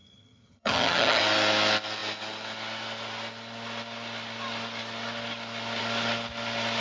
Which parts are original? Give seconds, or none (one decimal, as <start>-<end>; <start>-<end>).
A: 1.2-6.8